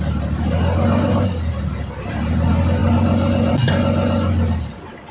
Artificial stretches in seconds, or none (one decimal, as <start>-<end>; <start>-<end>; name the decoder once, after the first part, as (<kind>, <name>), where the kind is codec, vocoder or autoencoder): none